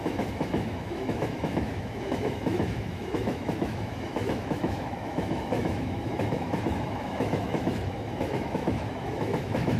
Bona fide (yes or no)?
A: no